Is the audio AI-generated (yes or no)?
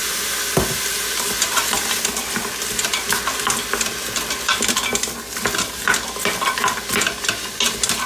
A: no